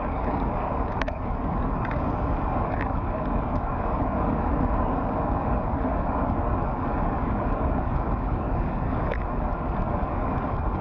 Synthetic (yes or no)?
yes